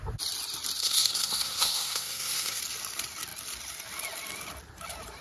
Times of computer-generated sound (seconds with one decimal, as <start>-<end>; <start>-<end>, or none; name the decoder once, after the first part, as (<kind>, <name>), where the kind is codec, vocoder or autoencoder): 0.8-2.6 (codec, SNAC)